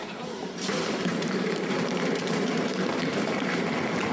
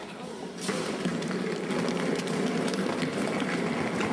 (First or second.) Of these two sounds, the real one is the second